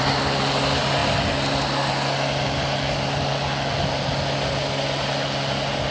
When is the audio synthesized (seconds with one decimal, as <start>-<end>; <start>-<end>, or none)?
none